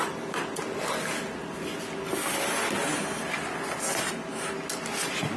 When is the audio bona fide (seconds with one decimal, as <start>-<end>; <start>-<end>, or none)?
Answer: 0.0-5.4

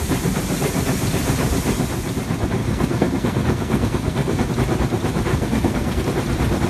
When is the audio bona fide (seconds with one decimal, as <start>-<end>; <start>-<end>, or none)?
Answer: 0.0-2.6; 4.5-5.3; 6.0-6.7

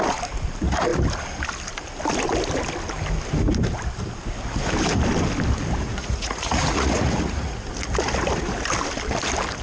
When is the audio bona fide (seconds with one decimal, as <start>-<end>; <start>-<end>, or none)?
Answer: 0.0-5.8; 7.7-9.6